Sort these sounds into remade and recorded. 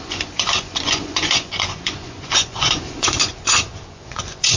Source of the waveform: remade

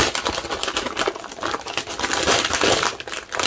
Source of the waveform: recorded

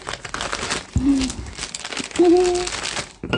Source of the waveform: recorded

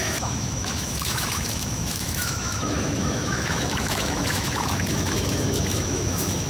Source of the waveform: remade